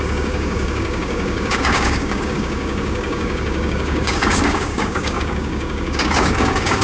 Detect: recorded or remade remade